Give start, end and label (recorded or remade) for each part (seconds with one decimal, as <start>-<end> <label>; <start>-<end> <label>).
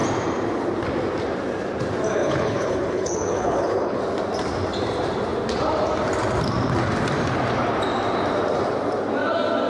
0.0-2.2 recorded; 2.2-4.0 remade; 4.0-9.7 recorded